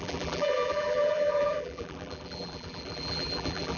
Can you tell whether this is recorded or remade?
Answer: remade